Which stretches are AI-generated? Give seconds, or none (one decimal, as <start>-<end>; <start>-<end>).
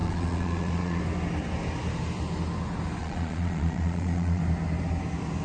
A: 0.0-1.0; 3.0-4.4